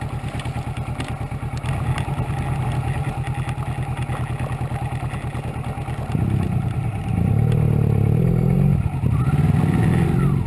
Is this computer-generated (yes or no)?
no